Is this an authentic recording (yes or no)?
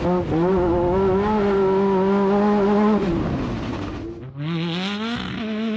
yes